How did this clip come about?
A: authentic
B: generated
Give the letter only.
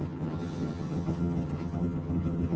B